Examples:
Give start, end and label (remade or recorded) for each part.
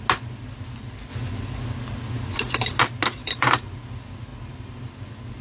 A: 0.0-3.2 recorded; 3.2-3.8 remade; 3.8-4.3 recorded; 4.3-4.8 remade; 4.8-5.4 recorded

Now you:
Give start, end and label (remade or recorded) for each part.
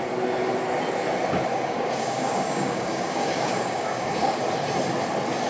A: 0.0-1.5 recorded; 1.5-4.4 remade; 4.4-5.5 recorded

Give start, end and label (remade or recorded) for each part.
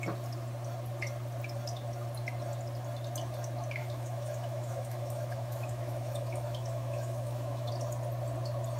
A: 0.0-3.8 recorded; 3.8-7.7 remade; 7.7-8.8 recorded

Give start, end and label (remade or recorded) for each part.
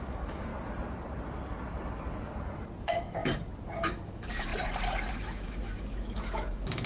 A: 0.0-0.5 remade; 0.5-2.8 recorded; 2.8-3.2 remade; 3.2-3.8 recorded; 3.8-4.5 remade; 4.5-5.1 recorded; 5.1-6.9 remade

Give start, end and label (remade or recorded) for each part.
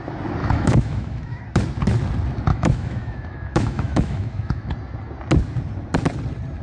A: 0.0-0.4 recorded; 0.4-1.4 remade; 1.4-2.5 recorded; 2.5-4.7 remade; 4.7-6.6 recorded